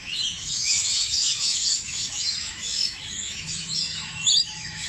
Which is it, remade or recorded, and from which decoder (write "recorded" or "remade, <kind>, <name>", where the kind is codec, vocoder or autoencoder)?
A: remade, autoencoder, DAC-VAE